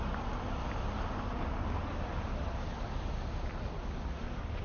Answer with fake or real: real